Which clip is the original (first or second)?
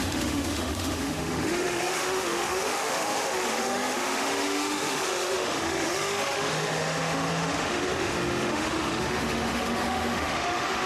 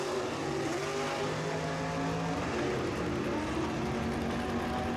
second